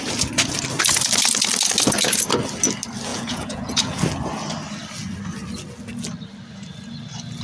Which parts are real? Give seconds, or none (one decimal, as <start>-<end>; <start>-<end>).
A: 0.0-3.1; 4.0-7.4